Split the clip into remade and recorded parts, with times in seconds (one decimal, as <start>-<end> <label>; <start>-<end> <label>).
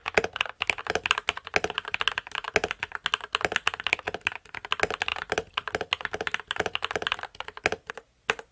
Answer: 0.0-8.5 recorded